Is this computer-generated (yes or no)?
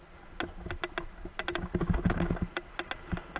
no